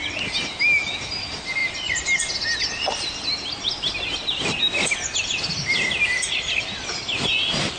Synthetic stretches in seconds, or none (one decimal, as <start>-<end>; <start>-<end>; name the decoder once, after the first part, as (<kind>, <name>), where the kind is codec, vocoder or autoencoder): none